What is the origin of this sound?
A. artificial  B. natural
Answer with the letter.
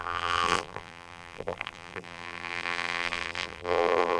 A